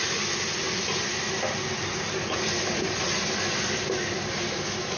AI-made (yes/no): no